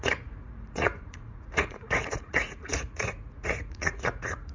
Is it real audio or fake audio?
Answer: fake